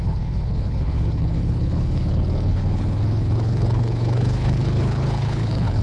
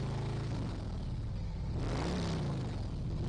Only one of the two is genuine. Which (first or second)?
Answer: second